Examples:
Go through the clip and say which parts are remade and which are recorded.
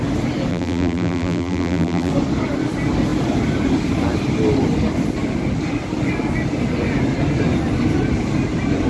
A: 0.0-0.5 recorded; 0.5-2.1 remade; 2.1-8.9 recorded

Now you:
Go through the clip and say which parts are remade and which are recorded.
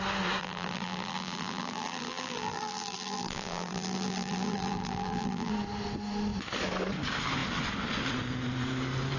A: 0.0-0.4 recorded; 0.4-5.5 remade; 5.5-9.2 recorded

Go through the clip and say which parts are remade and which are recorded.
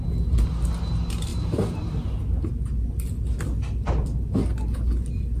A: 0.0-1.3 recorded; 1.3-2.2 remade; 2.2-5.4 recorded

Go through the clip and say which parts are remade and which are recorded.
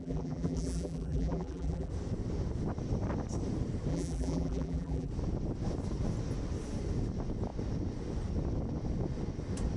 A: 0.0-1.9 remade; 1.9-3.9 recorded; 3.9-5.1 remade; 5.1-9.8 recorded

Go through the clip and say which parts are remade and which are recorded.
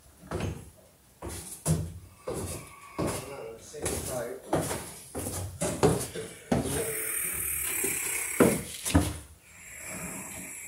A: 0.0-5.9 recorded; 5.9-7.4 remade; 7.4-10.7 recorded